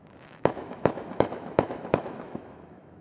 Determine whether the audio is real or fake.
fake